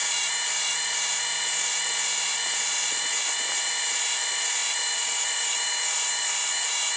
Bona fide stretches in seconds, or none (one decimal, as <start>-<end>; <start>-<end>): none